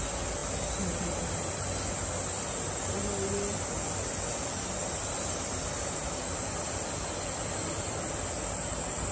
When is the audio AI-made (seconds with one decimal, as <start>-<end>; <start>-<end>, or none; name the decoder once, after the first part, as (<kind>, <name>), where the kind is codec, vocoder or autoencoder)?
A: none